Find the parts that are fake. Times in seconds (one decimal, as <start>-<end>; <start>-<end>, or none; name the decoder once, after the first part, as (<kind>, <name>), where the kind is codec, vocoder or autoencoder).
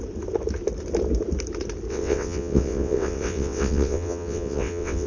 1.9-5.1 (vocoder, WaveNeXt)